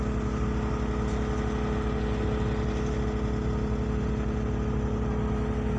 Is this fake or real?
real